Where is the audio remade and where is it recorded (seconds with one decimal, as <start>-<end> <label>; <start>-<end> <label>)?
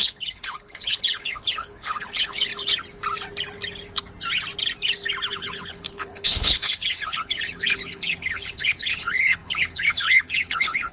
0.0-2.5 remade; 2.5-5.3 recorded; 5.3-10.9 remade